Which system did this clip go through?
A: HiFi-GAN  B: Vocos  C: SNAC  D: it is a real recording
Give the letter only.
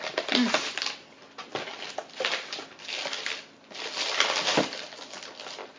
D